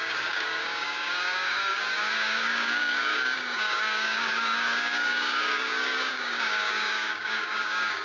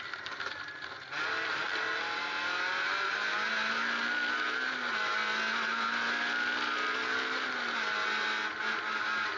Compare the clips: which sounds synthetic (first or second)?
first